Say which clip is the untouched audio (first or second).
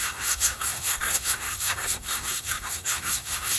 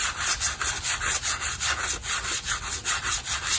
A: second